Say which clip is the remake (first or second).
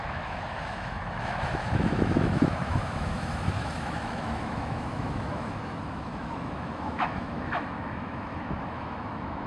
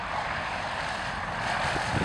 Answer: first